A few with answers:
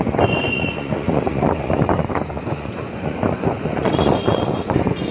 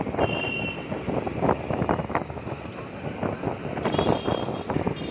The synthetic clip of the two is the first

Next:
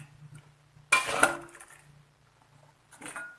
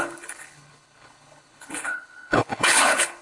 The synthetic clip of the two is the second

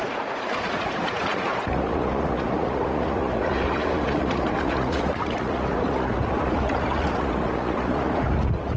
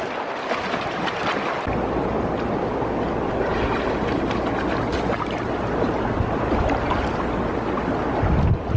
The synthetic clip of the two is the first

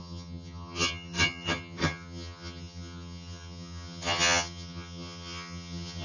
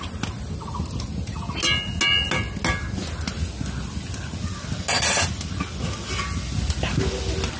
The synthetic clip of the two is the first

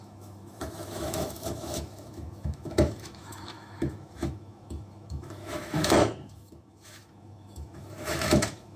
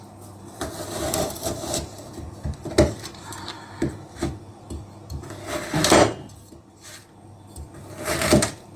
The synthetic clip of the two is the first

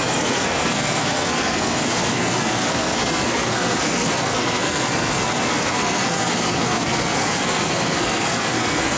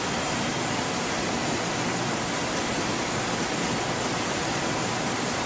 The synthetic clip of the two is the first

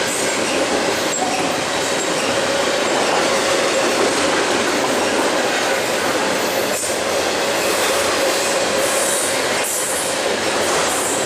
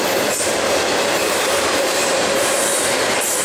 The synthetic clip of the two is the second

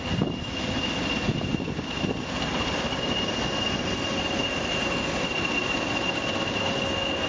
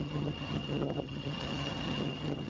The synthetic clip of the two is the second